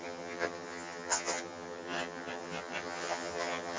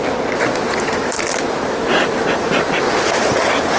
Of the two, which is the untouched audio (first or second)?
second